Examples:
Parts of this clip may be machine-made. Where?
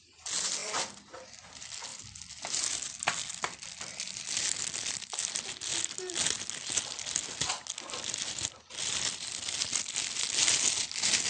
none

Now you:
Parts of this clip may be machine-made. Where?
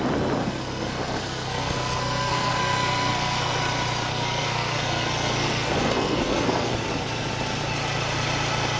0.4-3.6 (codec, SNAC); 4.1-6.7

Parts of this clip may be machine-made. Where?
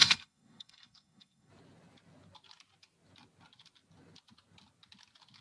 0.0-1.5 (codec, SNAC)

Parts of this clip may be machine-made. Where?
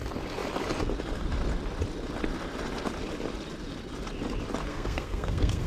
4.7-5.7 (codec, SNAC)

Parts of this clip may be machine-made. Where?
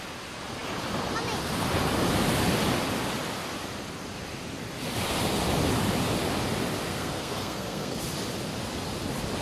6.9-8.0 (codec, SNAC)